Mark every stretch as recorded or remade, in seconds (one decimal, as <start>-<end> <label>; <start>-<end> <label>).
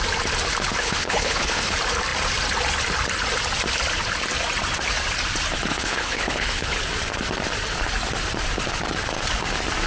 0.0-0.8 recorded; 0.8-1.7 remade; 1.7-5.7 recorded; 5.7-6.8 remade; 6.8-9.9 recorded